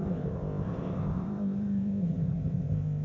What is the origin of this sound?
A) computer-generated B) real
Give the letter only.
A